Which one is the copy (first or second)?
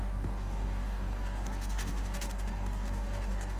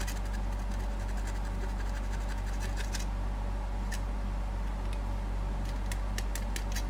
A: first